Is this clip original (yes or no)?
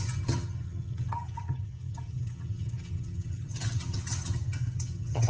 no